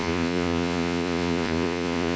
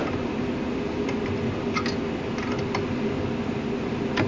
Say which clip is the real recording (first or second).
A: second